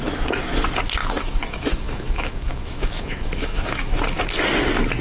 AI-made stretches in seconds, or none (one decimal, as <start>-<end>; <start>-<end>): 1.0-3.9